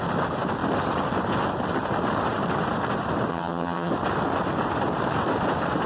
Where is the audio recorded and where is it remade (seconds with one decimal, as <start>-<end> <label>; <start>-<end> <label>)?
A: 0.0-3.3 recorded; 3.3-3.9 remade; 3.9-5.9 recorded

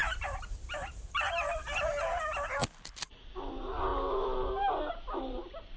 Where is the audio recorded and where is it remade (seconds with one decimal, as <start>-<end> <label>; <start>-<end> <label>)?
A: 0.0-2.3 remade; 2.3-3.1 recorded; 3.1-3.9 remade; 3.9-4.9 recorded; 4.9-5.8 remade

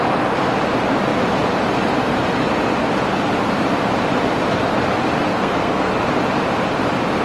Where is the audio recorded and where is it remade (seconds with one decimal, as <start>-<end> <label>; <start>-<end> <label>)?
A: 0.0-5.3 recorded; 5.3-5.9 remade; 5.9-7.2 recorded

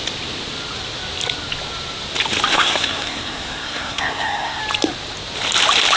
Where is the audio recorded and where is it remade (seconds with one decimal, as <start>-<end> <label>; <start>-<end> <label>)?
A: 0.0-2.5 recorded; 2.5-4.6 remade; 4.6-6.0 recorded

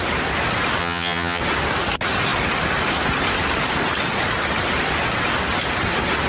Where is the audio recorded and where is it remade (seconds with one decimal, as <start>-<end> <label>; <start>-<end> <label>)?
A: 0.0-0.8 recorded; 0.8-1.4 remade; 1.4-6.3 recorded